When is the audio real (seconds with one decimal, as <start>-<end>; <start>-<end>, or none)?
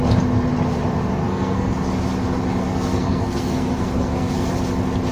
0.0-1.2; 1.7-2.6; 4.5-5.1